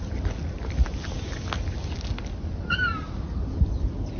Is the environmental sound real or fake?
real